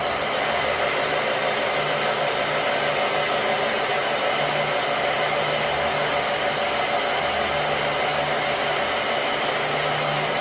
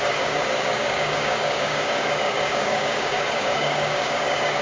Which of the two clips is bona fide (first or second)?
first